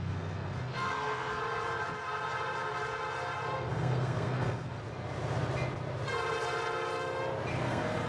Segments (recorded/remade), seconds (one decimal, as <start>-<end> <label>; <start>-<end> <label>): 0.0-1.4 remade; 1.4-3.6 recorded; 3.6-4.8 remade; 4.8-7.5 recorded; 7.5-8.1 remade